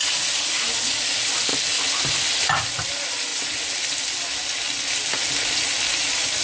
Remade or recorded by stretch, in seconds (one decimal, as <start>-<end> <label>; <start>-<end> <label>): 0.0-6.4 recorded